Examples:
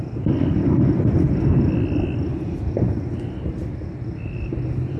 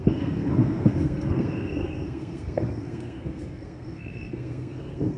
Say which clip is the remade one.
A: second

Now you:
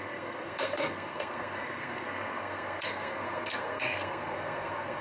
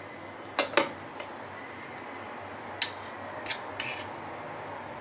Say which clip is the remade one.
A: first